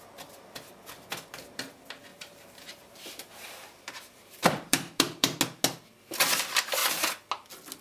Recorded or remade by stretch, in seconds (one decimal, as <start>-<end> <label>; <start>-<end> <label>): 0.0-2.1 recorded; 2.1-5.4 remade; 5.4-7.8 recorded